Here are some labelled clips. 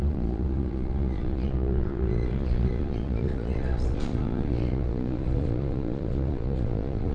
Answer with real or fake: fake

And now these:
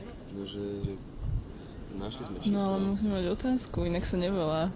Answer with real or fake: real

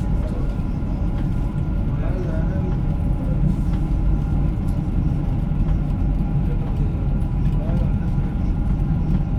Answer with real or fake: real